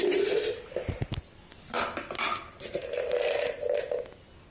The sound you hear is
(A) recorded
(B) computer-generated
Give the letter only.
A